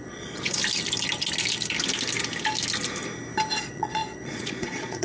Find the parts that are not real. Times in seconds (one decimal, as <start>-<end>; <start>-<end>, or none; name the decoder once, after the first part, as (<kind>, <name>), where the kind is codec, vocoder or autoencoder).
0.0-0.6 (vocoder, Vocos); 3.6-5.0